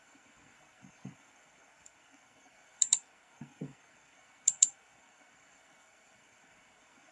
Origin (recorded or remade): remade